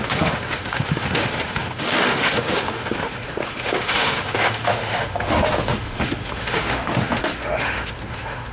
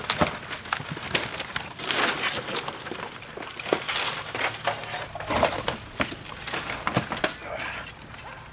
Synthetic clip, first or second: first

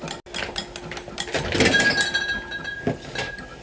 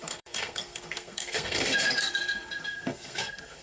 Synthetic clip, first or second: second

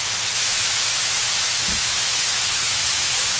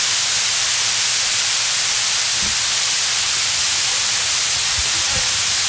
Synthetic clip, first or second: first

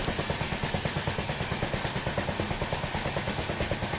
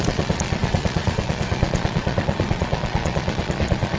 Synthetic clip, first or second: second